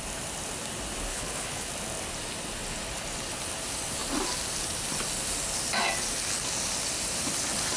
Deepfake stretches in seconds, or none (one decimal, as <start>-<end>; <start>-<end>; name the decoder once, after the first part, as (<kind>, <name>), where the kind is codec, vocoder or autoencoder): 1.1-1.7 (codec, HILCodec)